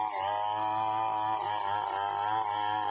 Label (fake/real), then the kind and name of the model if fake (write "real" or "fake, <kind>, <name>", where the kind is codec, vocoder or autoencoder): real